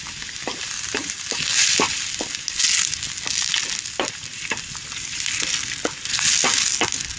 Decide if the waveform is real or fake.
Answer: real